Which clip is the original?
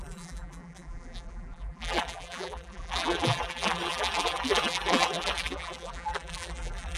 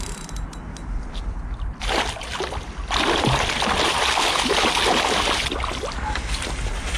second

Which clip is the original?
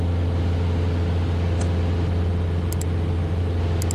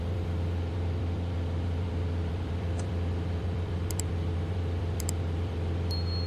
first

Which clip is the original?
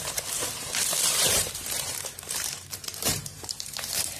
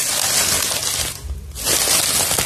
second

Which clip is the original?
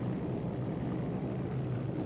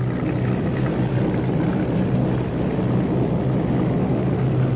second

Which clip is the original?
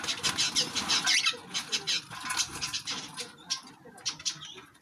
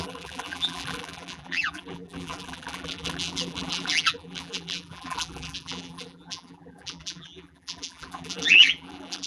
first